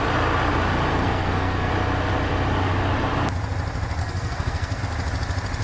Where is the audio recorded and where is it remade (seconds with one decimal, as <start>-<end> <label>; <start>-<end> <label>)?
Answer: 0.0-0.9 recorded; 0.9-1.7 remade; 1.7-4.0 recorded; 4.0-4.8 remade; 4.8-5.6 recorded